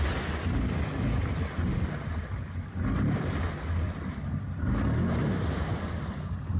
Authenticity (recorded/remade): recorded